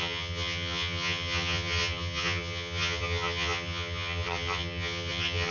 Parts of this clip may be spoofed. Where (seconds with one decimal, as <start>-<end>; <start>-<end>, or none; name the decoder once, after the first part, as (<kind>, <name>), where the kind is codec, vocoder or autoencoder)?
0.0-5.5 (vocoder, HiFi-GAN)